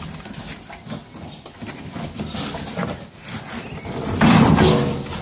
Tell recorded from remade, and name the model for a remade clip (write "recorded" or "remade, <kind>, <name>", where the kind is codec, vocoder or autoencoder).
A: recorded